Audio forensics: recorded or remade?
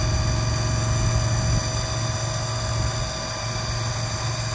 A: recorded